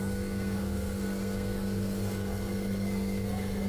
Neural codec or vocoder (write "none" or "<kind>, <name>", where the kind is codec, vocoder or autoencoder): codec, SNAC